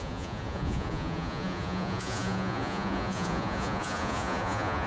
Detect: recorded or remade remade